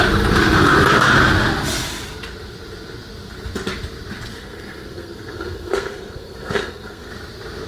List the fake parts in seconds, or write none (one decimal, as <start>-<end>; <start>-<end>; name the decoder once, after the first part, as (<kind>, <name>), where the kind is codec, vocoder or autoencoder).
4.3-7.1 (codec, SNAC)